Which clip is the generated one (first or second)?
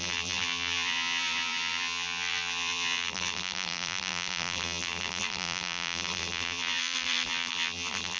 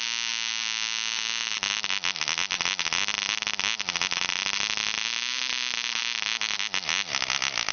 first